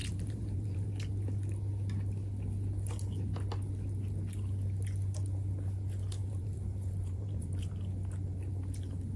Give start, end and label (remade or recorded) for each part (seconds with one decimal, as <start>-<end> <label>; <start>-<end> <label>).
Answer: 0.0-0.9 remade; 0.9-6.2 recorded; 6.2-7.7 remade; 7.7-9.2 recorded